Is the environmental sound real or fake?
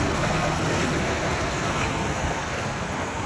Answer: fake